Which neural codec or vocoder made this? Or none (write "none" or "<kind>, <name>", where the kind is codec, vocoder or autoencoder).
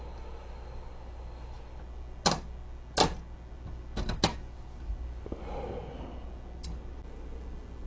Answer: none